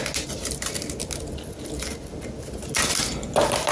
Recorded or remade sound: recorded